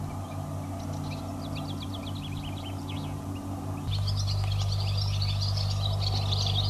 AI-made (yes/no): no